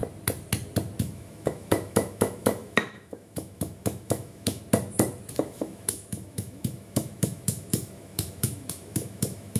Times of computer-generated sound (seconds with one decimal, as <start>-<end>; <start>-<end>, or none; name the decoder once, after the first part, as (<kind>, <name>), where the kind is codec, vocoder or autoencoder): 1.0-4.6 (autoencoder, DAC-VAE); 5.3-9.6